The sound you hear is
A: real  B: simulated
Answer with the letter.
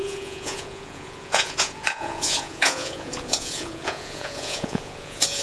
B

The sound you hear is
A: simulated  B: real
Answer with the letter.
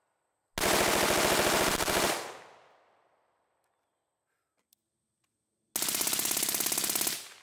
B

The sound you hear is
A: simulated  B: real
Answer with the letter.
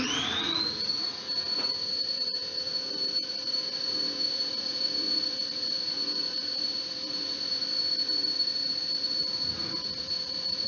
A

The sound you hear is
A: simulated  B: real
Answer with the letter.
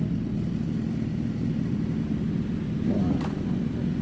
B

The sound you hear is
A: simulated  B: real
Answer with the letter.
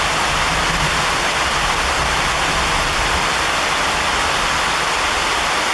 B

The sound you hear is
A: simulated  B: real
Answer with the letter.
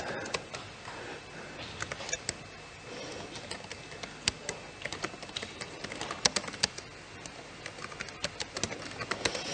B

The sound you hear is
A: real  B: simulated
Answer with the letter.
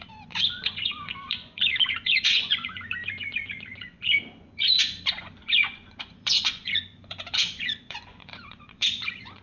B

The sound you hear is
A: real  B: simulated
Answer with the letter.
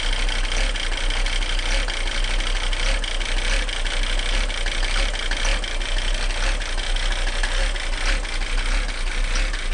A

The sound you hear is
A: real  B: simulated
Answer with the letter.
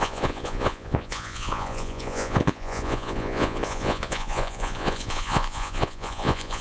B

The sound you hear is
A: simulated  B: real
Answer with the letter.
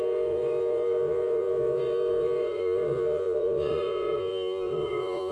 A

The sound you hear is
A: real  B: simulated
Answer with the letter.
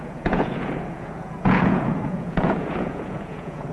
B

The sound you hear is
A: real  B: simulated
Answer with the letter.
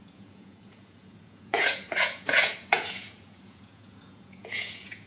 B